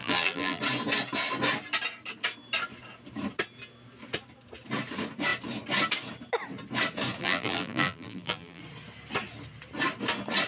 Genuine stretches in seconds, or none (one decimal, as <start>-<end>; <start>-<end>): 0.6-7.2; 8.6-10.5